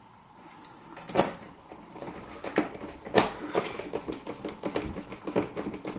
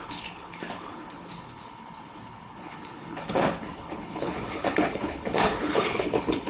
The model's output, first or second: second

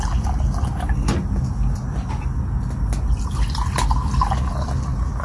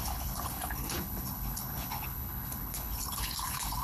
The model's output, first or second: second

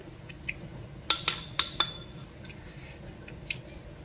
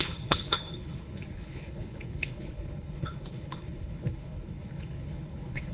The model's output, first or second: second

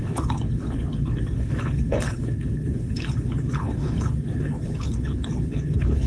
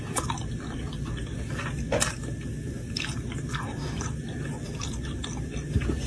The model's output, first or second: first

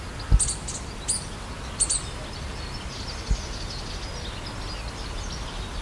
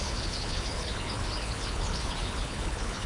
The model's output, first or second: second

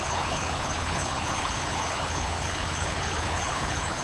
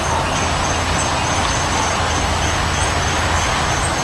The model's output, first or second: first